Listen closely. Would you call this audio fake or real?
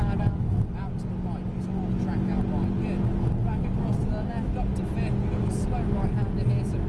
real